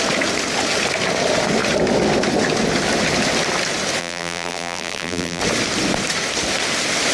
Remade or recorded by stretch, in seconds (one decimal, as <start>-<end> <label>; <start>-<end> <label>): 0.0-4.0 recorded; 4.0-5.4 remade; 5.4-7.1 recorded